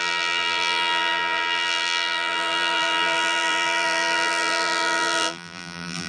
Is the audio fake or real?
fake